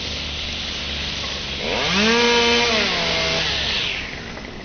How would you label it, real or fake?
real